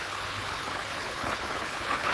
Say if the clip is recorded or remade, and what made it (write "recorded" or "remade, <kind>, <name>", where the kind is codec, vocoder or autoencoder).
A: remade, codec, HILCodec